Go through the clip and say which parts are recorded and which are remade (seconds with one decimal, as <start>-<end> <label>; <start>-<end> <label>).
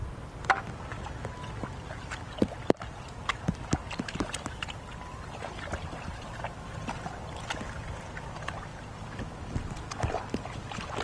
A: 0.0-11.0 recorded